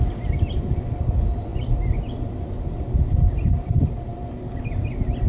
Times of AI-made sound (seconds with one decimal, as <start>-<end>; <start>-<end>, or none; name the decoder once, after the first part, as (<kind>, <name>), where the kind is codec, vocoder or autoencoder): none